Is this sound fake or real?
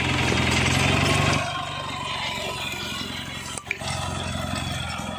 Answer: real